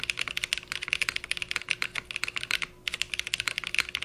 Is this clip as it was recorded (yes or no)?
yes